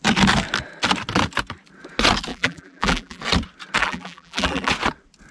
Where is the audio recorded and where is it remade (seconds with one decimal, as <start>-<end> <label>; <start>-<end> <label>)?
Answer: 0.0-2.3 recorded; 2.3-3.2 remade; 3.2-3.8 recorded; 3.8-4.7 remade; 4.7-5.3 recorded